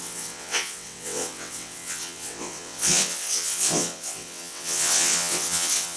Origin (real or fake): fake